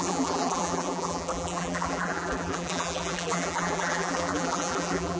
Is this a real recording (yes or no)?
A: no